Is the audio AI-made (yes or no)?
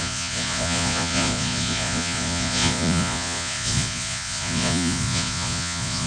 yes